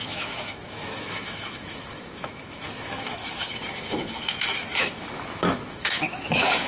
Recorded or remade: remade